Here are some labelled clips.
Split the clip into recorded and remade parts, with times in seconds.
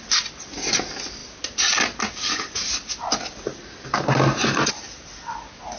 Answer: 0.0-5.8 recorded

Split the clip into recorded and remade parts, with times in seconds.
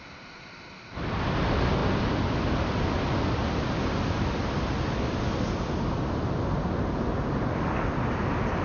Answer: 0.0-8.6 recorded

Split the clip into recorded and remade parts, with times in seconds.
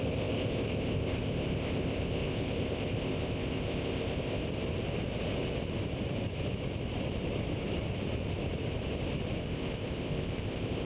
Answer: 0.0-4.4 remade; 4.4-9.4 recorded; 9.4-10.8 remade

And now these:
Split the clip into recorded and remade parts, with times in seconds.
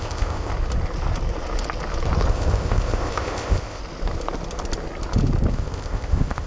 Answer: 0.0-0.5 remade; 0.5-2.3 recorded; 2.3-3.8 remade; 3.8-5.5 recorded; 5.5-6.5 remade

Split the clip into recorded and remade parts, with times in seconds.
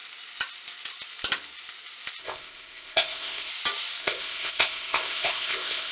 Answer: 0.0-2.2 recorded; 2.2-3.5 remade; 3.5-4.0 recorded; 4.0-5.9 remade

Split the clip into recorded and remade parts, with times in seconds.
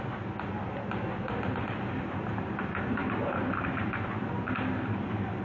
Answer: 0.0-5.4 recorded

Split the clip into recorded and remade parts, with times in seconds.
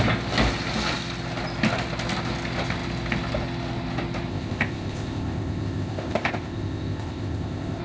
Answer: 0.0-4.3 recorded; 4.3-7.8 remade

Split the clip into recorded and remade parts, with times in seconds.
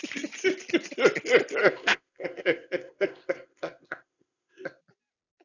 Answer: 0.0-1.6 recorded; 1.6-4.8 remade; 4.8-5.4 recorded